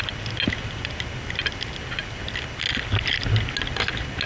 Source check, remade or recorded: recorded